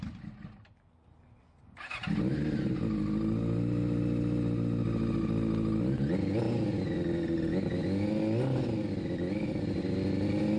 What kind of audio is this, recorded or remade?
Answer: recorded